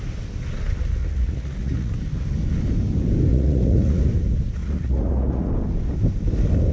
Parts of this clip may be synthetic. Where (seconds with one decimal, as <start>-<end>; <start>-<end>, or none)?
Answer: 1.0-1.9; 3.3-4.0; 4.6-5.5